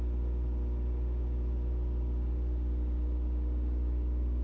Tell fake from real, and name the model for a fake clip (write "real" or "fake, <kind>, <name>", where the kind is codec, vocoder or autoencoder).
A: real